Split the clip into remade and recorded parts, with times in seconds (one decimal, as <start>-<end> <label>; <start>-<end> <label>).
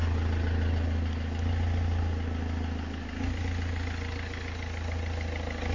0.0-5.7 recorded